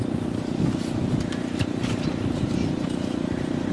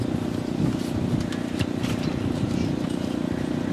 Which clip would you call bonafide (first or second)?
second